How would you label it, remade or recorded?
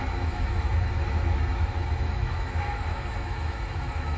remade